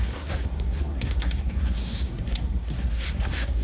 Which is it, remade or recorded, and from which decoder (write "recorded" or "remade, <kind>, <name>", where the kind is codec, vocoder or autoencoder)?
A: remade, codec, SNAC